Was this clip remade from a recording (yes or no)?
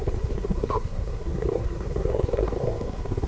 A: yes